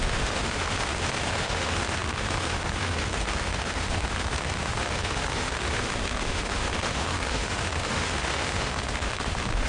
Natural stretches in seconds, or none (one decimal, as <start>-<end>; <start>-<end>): none